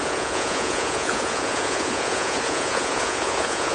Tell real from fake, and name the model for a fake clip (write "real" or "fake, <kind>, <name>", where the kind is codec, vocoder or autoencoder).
fake, vocoder, Vocos